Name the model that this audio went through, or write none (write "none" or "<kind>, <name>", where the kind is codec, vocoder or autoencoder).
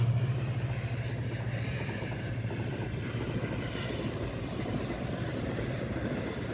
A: none